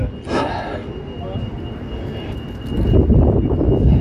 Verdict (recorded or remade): recorded